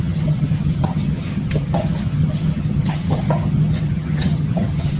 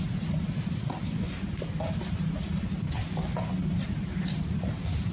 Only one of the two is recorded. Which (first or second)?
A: second